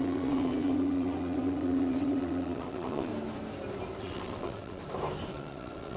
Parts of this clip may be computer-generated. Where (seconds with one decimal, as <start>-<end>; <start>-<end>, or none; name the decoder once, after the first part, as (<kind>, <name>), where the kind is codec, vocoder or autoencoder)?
0.0-3.1 (vocoder, WaveNeXt); 4.0-4.8; 5.3-6.0

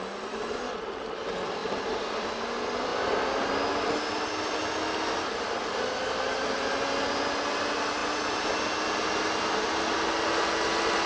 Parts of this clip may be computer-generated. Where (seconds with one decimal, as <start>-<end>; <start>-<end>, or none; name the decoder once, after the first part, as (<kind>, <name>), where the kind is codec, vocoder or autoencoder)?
none

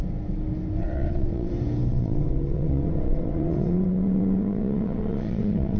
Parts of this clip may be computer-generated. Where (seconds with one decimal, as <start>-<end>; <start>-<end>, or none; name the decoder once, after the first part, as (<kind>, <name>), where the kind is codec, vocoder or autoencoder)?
0.8-1.5 (vocoder, WaveNeXt); 1.9-5.8